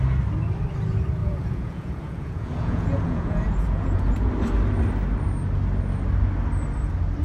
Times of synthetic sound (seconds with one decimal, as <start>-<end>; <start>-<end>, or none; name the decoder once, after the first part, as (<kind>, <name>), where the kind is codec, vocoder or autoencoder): 1.2-4.3 (vocoder, Vocos)